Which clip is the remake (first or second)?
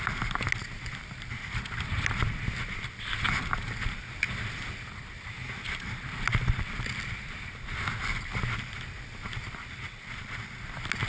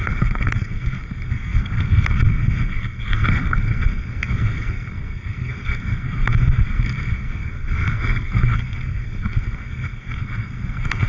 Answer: second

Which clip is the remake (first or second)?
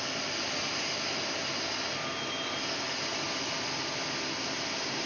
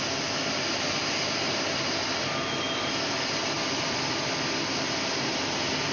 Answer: second